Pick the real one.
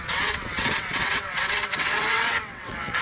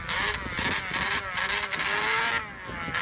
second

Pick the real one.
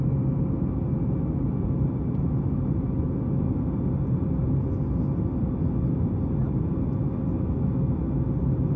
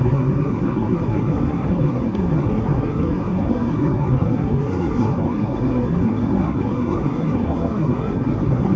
first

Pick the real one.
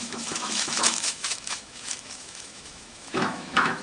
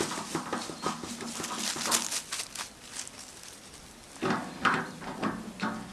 second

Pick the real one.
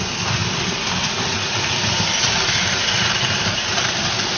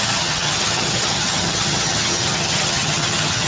first